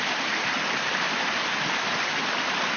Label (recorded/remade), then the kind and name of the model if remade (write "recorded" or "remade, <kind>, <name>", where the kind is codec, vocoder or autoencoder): recorded